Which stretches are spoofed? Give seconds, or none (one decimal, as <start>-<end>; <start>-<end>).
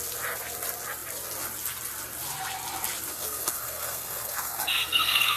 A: 3.1-5.4